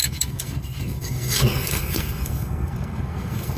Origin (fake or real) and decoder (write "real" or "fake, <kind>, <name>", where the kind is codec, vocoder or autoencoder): fake, codec, SNAC